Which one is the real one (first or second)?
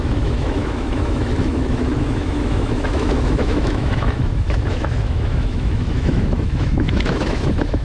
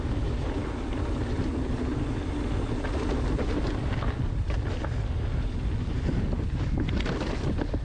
second